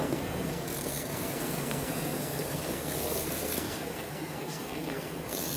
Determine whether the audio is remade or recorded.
remade